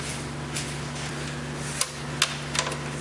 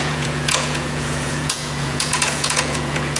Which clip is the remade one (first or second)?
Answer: second